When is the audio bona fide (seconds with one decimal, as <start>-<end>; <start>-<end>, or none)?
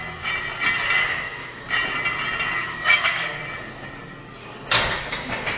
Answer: 0.0-1.0; 1.7-2.6; 3.4-4.4; 5.0-5.6